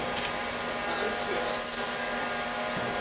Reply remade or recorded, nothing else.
recorded